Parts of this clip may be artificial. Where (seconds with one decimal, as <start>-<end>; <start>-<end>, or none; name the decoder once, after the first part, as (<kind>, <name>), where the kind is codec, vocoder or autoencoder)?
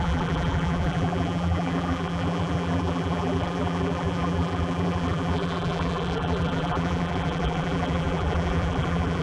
0.0-9.2 (vocoder, BigVGAN v2)